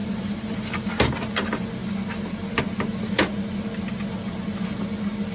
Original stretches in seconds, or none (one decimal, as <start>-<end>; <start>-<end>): 0.9-5.3